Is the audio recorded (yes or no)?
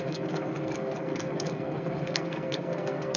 no